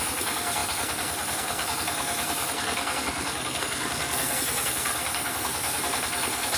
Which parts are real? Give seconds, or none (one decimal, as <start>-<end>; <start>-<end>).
none